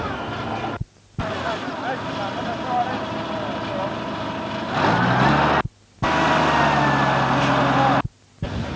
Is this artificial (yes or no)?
no